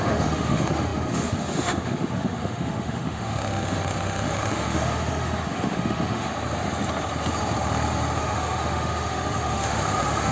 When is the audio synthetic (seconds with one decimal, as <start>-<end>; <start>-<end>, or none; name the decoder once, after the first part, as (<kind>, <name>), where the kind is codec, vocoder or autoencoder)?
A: 0.0-6.3 (autoencoder, DAC-VAE); 8.2-10.3